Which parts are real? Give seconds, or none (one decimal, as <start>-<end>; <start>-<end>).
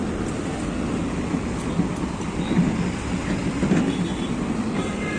0.0-5.2